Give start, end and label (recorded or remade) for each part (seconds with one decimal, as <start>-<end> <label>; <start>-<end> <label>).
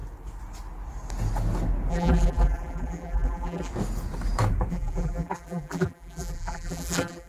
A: 0.0-1.9 recorded; 1.9-3.7 remade; 3.7-4.7 recorded; 4.7-7.3 remade